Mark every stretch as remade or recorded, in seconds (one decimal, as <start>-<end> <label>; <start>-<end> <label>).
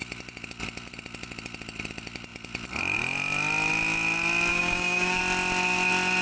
0.0-4.5 recorded; 4.5-5.2 remade; 5.2-6.2 recorded